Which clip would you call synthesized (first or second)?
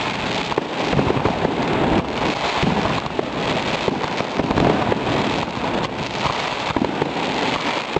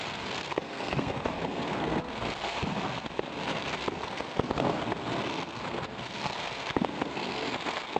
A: second